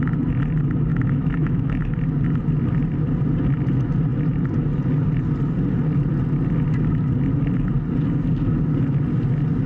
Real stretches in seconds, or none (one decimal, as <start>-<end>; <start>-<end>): 0.0-0.9; 1.8-9.7